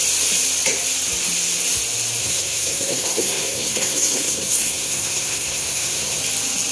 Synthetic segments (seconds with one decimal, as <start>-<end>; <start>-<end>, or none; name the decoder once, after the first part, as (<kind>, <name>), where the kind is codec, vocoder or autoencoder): 2.2-6.2 (codec, SNAC)